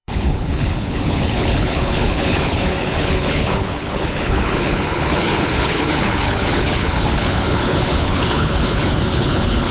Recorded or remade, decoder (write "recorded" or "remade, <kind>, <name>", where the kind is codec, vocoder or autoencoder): remade, codec, HILCodec